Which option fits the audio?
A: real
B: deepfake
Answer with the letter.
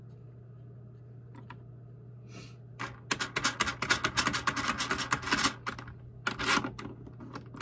A